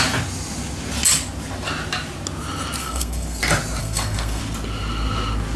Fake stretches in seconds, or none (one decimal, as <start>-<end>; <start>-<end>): 2.8-3.4; 3.8-4.4